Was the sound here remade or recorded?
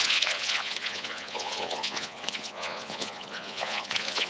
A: remade